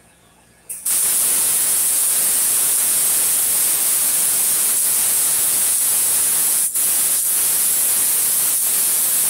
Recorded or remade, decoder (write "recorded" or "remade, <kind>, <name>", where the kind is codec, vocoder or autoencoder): remade, vocoder, Vocos